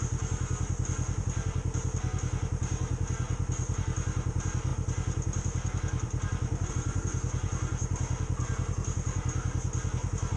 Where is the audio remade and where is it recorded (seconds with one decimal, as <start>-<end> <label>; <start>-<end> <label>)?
0.0-10.4 recorded